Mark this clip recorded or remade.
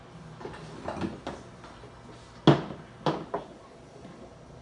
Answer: recorded